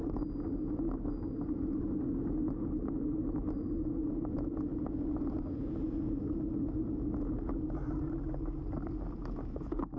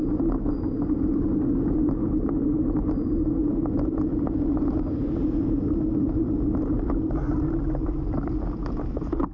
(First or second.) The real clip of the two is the first